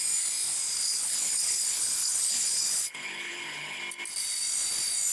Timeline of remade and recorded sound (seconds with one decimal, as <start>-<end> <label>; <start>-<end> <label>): 0.0-0.7 recorded; 0.7-3.8 remade; 3.8-5.1 recorded